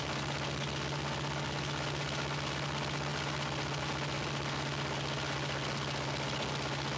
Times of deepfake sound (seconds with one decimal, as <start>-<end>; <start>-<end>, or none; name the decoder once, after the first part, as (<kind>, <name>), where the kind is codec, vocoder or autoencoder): none